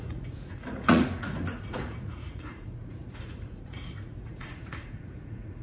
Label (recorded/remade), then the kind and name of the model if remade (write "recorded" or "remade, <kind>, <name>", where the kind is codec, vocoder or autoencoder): remade, vocoder, Vocos